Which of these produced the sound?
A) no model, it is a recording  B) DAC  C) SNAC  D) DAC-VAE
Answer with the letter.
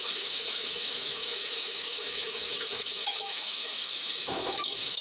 D